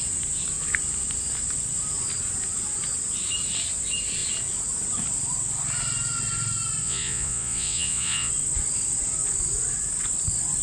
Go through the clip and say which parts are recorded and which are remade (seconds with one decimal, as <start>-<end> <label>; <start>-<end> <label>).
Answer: 0.0-6.8 recorded; 6.8-8.3 remade; 8.3-10.6 recorded